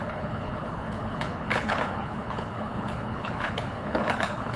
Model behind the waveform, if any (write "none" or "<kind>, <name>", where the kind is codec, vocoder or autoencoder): codec, HILCodec